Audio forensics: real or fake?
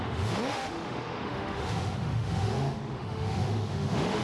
fake